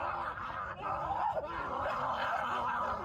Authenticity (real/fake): real